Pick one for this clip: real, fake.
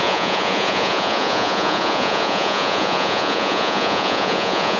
fake